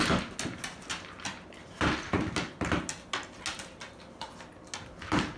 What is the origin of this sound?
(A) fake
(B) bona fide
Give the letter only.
B